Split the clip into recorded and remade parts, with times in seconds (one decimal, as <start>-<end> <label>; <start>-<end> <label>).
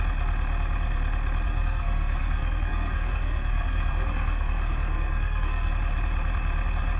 0.0-1.5 recorded; 1.5-5.7 remade; 5.7-7.0 recorded